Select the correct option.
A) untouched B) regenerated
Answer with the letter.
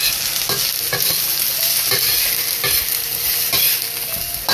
A